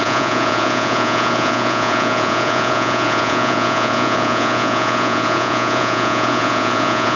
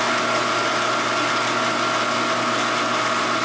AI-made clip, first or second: first